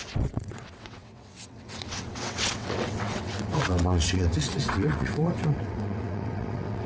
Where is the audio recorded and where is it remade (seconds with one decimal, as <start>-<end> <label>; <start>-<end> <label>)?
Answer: 0.0-6.9 remade